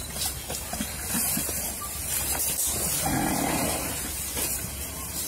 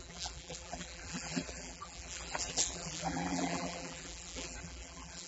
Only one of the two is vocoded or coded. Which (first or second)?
second